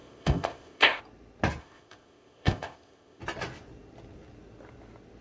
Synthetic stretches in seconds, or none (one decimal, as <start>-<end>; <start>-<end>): 0.0-1.0; 1.6-3.2